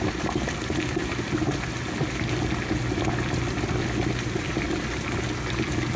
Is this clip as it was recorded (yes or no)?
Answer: yes